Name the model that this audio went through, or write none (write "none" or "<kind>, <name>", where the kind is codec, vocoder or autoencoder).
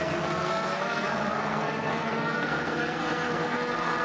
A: codec, SNAC